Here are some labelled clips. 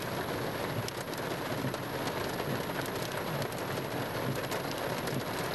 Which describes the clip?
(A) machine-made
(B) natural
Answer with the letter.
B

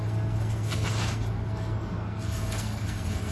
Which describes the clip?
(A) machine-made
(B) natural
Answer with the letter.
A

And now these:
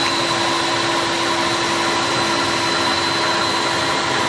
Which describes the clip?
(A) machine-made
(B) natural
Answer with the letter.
B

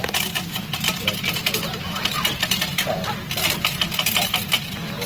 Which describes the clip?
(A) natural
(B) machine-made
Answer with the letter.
B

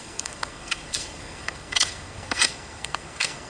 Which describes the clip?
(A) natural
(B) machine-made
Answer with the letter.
B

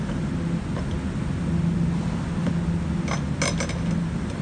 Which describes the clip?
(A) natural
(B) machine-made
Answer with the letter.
A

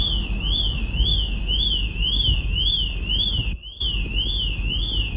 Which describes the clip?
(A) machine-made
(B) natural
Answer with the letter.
B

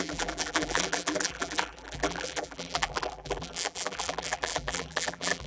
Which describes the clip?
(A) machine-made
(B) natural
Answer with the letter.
A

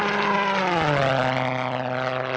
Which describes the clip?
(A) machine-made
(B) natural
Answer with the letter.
B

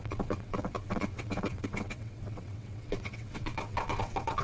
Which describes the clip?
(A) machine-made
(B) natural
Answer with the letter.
A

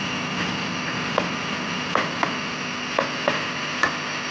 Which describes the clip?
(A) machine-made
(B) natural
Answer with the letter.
B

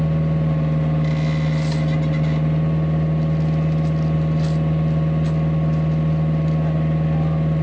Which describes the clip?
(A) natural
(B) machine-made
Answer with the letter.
A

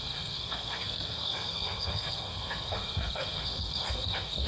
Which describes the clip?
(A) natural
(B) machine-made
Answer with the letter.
B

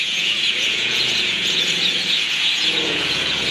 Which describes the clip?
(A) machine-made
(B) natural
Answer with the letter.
A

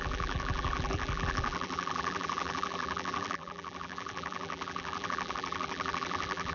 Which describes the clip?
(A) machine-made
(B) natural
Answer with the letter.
A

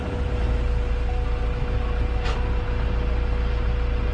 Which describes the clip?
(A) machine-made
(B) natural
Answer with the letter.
B